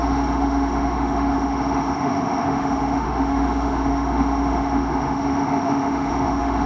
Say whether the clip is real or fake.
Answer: fake